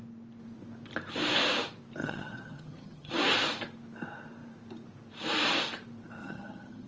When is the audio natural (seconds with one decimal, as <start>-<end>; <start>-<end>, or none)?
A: 0.0-2.0; 3.1-6.2